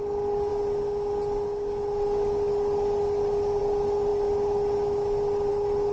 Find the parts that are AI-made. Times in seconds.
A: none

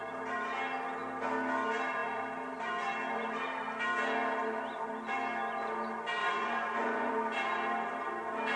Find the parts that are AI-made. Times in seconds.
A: 6.2-7.1 (vocoder, Vocos)

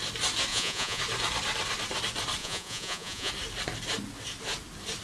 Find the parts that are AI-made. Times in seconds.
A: 0.5-1.0 (vocoder, Vocos); 2.4-3.3

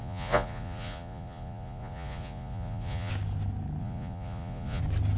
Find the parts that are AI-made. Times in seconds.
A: 0.0-3.1 (vocoder, Vocos); 3.8-4.8